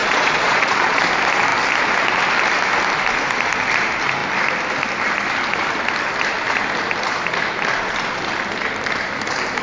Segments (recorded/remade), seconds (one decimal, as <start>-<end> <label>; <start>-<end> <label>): 0.0-1.0 remade; 1.0-9.6 recorded